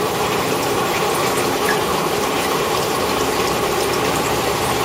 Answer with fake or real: fake